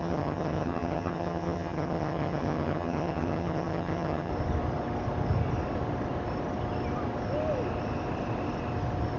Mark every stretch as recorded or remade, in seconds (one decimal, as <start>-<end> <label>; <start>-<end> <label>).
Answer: 0.0-4.3 remade; 4.3-9.2 recorded